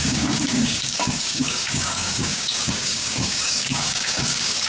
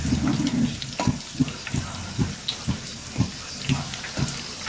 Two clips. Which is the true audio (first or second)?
second